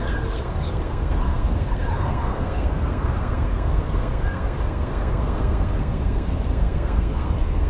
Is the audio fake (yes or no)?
yes